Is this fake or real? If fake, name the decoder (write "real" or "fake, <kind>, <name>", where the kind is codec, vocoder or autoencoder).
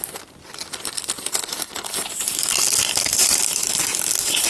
real